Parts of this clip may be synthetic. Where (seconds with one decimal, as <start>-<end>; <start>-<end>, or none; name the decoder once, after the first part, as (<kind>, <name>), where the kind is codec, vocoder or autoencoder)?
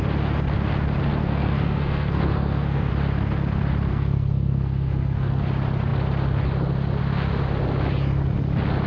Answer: 1.2-2.9 (codec, SNAC); 3.9-5.4